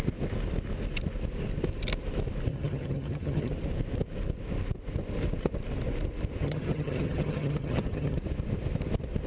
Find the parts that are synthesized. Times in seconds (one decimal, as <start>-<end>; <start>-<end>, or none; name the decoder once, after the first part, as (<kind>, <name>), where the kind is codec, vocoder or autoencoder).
2.5-3.5 (vocoder, HiFi-GAN); 6.4-8.2